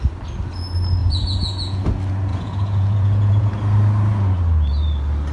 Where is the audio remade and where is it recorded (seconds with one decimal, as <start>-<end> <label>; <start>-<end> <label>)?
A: 0.0-1.0 recorded; 1.0-1.8 remade; 1.8-2.3 recorded; 2.3-3.5 remade; 3.5-5.3 recorded